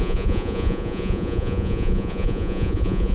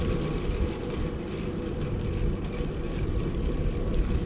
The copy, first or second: first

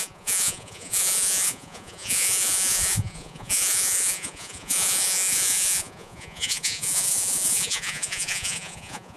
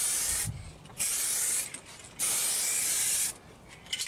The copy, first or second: first